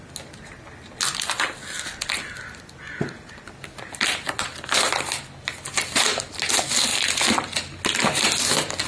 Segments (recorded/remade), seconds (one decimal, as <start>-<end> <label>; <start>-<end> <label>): 0.0-8.9 recorded